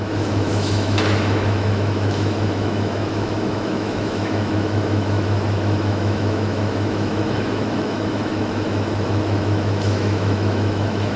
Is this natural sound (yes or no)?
no